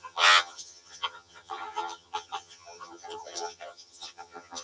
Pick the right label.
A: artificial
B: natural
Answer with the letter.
A